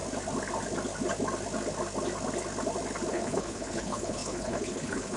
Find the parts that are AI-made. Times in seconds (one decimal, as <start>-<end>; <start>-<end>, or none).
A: 3.1-5.2